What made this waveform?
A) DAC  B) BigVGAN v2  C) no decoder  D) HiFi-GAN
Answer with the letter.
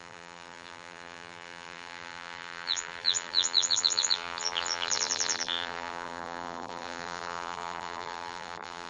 B